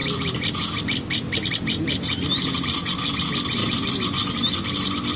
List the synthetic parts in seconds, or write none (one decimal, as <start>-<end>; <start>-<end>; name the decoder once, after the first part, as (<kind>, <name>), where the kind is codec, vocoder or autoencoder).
none